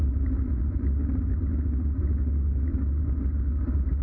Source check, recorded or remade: recorded